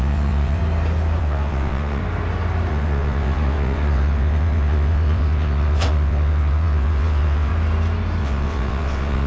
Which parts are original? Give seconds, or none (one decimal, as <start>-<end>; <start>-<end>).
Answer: 0.6-1.2; 2.0-2.7; 7.5-8.2